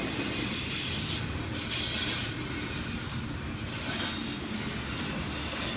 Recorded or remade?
recorded